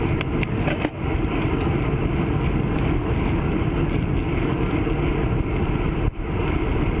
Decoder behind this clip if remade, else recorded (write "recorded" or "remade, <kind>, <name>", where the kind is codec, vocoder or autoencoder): recorded